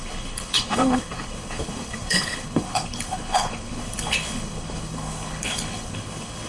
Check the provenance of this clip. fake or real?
fake